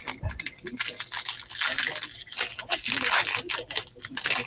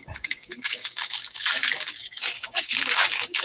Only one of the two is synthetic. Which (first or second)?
second